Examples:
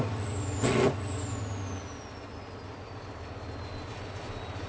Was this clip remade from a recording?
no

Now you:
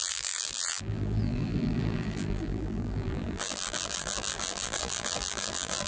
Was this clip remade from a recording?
yes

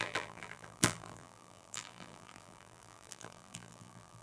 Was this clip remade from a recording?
yes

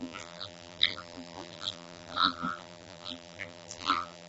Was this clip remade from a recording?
yes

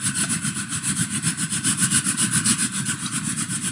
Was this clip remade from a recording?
yes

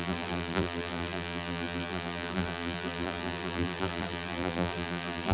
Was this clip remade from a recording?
yes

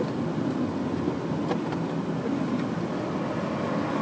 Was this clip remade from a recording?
no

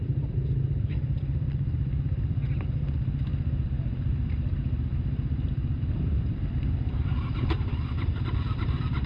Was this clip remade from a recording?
yes